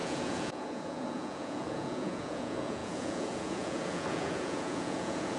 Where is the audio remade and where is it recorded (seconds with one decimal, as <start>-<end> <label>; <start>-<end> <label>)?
0.0-5.4 remade